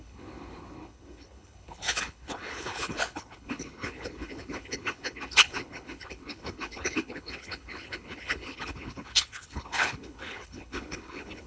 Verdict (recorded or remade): remade